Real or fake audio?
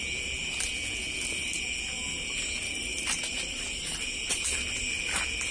real